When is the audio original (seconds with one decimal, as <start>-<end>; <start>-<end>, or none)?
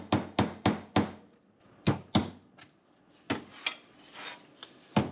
0.0-5.1